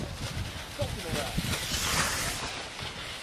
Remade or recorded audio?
recorded